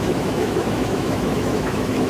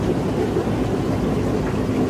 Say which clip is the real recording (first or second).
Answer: second